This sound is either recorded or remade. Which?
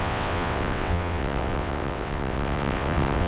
remade